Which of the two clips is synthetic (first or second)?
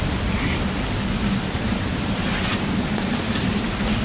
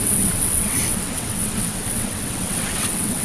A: second